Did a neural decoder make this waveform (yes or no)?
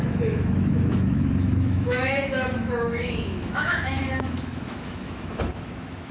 yes